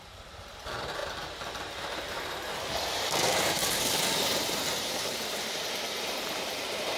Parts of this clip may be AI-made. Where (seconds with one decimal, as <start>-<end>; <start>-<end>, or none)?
0.0-7.0